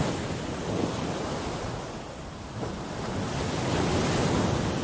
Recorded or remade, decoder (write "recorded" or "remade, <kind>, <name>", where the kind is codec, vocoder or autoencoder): recorded